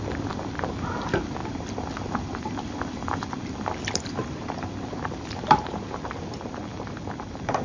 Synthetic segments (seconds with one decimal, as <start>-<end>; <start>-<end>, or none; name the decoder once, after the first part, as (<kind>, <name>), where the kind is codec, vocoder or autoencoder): none